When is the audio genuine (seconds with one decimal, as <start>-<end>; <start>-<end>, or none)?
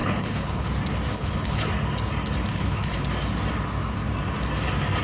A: 0.7-1.1; 1.7-2.5; 3.0-5.0